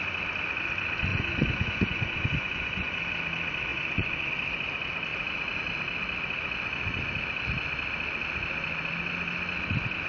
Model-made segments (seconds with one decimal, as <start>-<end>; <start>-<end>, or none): 1.1-3.1; 3.7-4.3